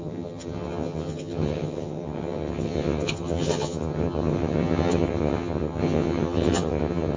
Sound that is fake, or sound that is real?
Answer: fake